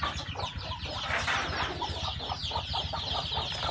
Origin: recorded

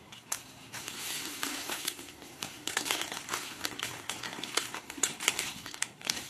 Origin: remade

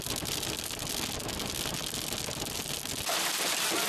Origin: recorded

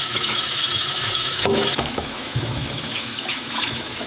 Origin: remade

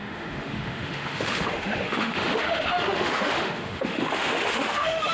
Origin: remade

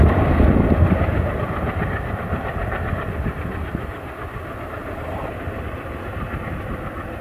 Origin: recorded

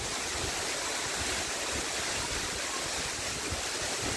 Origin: recorded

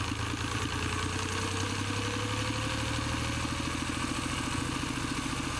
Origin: recorded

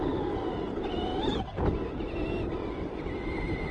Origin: recorded